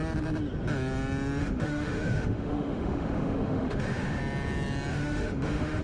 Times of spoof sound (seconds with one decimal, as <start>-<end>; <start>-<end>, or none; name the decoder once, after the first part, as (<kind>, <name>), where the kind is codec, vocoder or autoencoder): 1.4-4.2 (autoencoder, DAC-VAE); 4.9-5.8